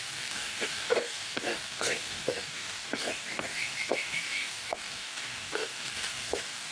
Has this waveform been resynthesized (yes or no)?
yes